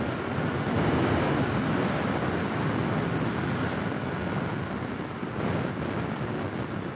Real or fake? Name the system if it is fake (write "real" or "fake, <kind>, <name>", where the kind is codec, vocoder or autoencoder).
real